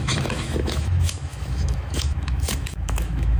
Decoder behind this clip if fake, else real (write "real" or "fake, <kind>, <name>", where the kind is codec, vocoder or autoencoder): fake, autoencoder, DAC-VAE